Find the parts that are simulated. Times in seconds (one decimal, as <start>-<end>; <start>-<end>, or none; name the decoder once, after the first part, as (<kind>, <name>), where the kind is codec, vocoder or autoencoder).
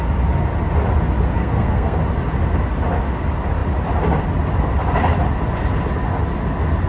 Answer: 1.4-2.0 (codec, SNAC)